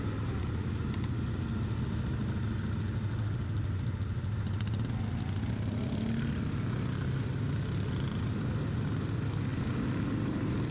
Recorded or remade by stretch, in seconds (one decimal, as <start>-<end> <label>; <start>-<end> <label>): 0.0-10.7 recorded